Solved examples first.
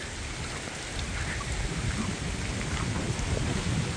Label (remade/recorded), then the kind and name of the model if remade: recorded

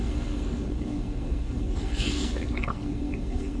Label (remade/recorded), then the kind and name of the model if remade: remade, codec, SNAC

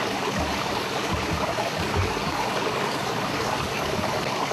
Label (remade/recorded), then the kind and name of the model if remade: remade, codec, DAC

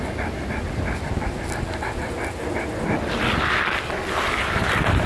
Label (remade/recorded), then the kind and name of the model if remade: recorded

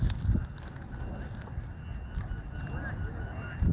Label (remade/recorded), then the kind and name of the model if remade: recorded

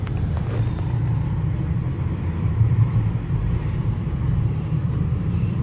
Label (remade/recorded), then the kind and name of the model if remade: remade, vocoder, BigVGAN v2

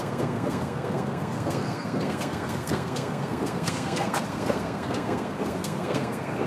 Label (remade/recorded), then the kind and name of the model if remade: remade, codec, SNAC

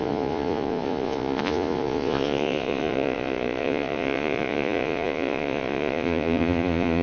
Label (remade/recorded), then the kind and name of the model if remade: remade, vocoder, Vocos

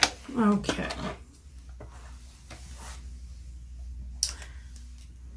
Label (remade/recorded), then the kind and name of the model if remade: recorded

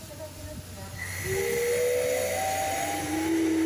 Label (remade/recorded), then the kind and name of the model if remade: recorded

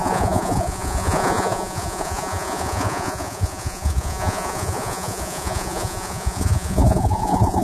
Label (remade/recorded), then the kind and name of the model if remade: remade, vocoder, Vocos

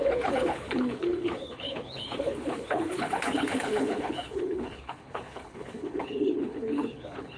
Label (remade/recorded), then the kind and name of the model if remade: remade, codec, HILCodec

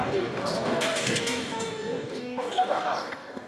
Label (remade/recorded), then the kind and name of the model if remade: remade, codec, DAC